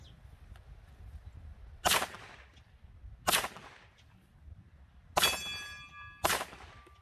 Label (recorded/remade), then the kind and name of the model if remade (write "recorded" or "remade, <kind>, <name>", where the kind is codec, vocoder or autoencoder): recorded